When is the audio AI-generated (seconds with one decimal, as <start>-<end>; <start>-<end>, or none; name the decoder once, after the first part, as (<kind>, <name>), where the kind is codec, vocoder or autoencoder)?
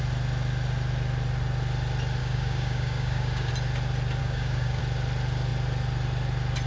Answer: 2.2-3.5 (codec, DAC); 4.2-4.8